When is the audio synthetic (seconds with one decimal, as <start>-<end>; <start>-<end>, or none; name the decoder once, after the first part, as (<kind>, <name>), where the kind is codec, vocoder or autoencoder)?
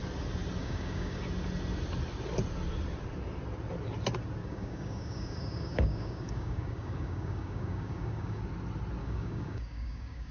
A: 0.6-1.2 (codec, DAC); 4.4-8.4; 9.0-10.3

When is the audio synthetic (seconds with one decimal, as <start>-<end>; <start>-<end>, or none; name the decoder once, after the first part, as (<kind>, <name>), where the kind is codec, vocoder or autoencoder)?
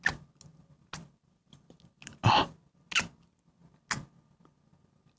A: none